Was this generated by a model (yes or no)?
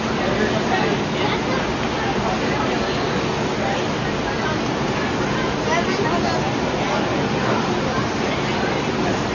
no